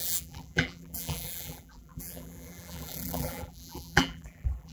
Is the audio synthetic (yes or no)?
yes